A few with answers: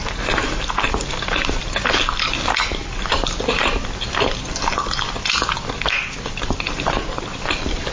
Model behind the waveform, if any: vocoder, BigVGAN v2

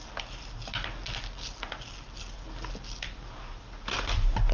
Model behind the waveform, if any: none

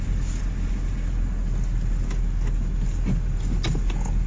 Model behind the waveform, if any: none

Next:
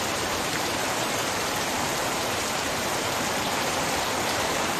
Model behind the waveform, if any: vocoder, BigVGAN v2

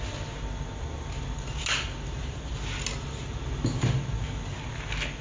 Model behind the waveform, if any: none